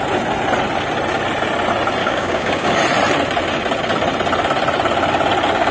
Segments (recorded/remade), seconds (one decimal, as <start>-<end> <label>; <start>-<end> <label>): 0.0-2.0 recorded; 2.0-2.8 remade; 2.8-5.7 recorded